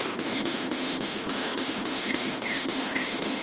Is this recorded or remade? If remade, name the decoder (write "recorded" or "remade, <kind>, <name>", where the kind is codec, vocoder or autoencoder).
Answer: remade, autoencoder, DAC-VAE